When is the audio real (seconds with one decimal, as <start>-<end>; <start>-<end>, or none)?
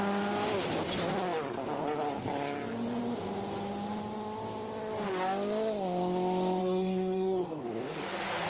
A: 0.0-6.6; 7.6-8.5